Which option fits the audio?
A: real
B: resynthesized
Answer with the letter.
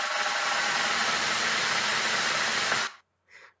A